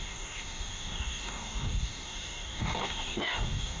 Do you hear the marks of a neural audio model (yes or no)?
yes